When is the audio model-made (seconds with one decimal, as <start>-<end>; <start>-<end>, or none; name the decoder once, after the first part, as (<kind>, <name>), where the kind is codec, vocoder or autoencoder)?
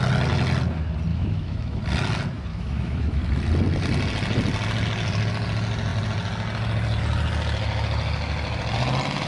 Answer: 1.1-1.8 (autoencoder, DAC-VAE); 2.5-3.2